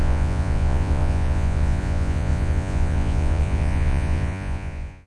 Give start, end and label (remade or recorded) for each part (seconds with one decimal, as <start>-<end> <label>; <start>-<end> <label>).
0.0-5.1 remade